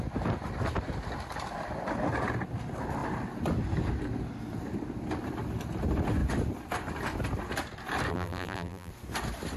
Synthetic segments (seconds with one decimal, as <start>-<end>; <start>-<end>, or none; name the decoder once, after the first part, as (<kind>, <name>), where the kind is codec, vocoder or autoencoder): 8.1-8.9 (vocoder, BigVGAN v2)